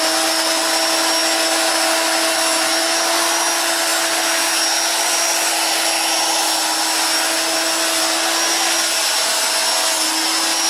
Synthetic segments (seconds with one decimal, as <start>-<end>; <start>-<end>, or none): none